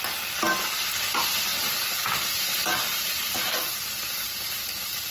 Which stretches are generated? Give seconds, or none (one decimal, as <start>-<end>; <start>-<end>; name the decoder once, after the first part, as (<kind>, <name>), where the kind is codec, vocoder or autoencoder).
1.5-4.6 (vocoder, BigVGAN v2)